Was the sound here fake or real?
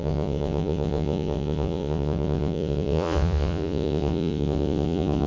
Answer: fake